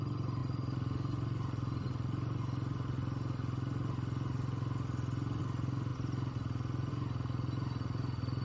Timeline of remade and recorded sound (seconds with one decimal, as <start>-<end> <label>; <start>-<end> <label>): 0.0-8.4 recorded